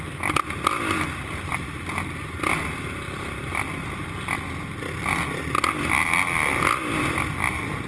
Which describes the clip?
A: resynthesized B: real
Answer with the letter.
B